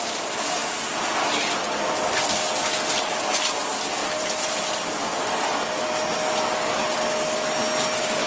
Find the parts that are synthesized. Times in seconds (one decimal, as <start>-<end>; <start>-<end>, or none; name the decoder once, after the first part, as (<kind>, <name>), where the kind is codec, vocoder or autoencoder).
4.0-4.6 (vocoder, BigVGAN v2)